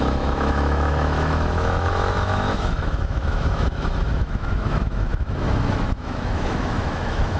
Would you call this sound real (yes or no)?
no